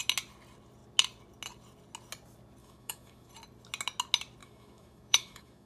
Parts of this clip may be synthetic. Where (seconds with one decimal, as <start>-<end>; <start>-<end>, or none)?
2.6-3.3; 4.4-5.7